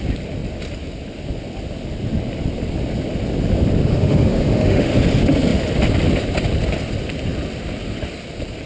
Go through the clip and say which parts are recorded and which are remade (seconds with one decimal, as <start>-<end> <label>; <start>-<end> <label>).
0.0-3.8 recorded; 3.8-4.9 remade; 4.9-8.7 recorded